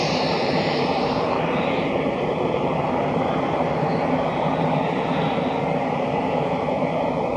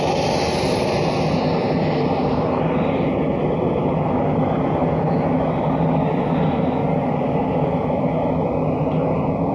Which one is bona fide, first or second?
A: second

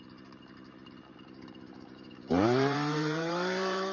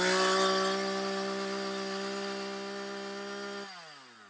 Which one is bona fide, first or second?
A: second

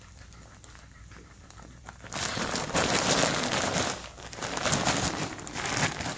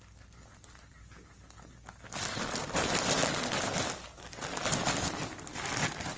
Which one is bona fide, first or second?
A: second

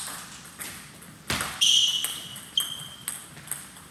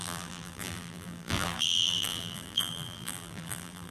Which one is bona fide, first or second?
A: first